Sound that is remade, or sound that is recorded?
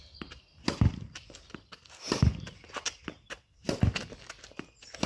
recorded